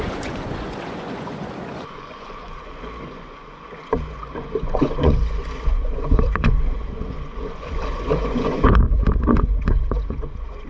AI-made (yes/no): yes